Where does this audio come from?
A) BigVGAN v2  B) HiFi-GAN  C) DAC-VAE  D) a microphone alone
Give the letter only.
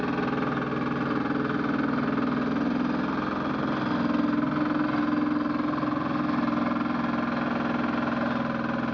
D